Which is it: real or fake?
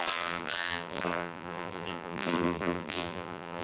fake